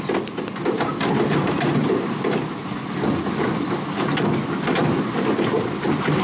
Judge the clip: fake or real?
real